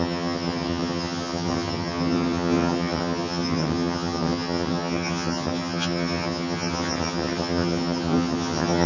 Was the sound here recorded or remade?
remade